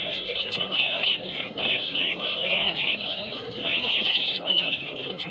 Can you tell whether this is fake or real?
fake